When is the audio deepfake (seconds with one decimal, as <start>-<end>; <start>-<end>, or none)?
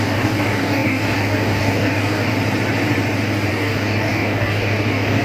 0.0-2.3; 3.5-5.2